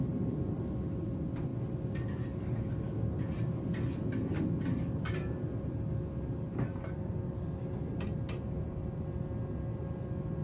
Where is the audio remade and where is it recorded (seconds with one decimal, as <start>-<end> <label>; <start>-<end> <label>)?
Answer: 0.0-10.4 recorded